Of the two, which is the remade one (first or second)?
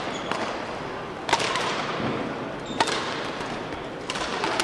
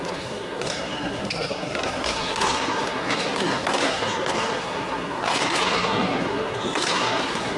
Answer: second